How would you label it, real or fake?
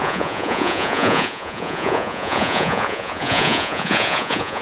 fake